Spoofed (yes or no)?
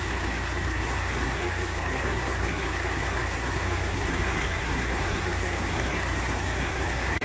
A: yes